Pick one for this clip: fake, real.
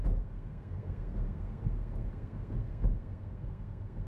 fake